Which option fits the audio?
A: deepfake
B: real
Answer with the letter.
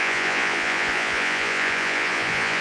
A